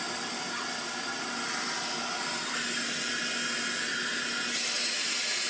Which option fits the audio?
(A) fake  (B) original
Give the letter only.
B